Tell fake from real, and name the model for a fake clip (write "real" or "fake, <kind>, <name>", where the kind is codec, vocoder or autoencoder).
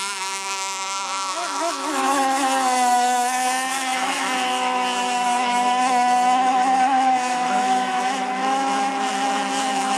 fake, autoencoder, DAC-VAE